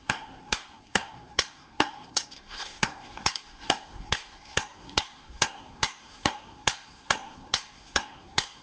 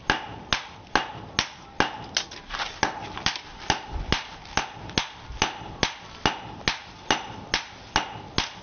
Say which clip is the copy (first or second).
first